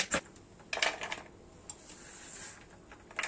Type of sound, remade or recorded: recorded